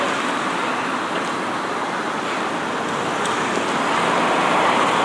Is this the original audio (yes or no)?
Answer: yes